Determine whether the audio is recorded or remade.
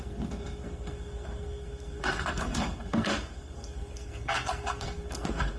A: remade